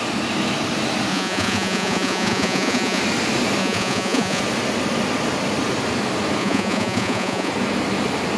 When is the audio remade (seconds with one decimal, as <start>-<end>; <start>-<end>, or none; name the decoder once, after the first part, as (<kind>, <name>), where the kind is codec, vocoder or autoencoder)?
1.1-3.0 (vocoder, Vocos); 3.6-4.4; 6.4-7.5